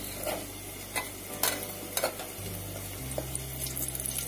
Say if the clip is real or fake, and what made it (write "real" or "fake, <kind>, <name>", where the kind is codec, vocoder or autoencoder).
real